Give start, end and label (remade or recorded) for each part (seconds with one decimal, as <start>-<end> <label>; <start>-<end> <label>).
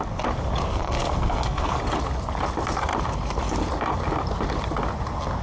0.0-0.7 recorded; 0.7-1.8 remade; 1.8-5.4 recorded